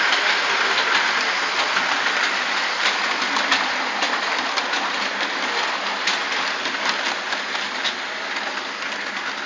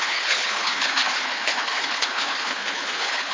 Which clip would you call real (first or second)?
first